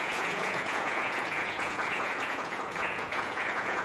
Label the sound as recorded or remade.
remade